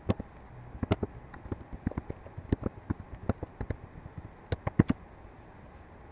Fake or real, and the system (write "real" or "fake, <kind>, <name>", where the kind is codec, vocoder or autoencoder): real